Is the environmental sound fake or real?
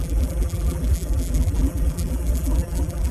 fake